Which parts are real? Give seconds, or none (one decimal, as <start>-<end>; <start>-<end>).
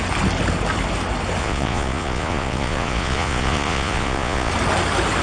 0.0-1.4; 4.5-5.2